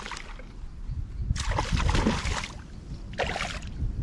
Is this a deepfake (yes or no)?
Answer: no